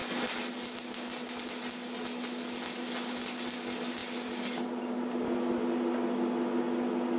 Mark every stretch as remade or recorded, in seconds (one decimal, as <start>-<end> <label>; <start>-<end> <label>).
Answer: 0.0-7.2 recorded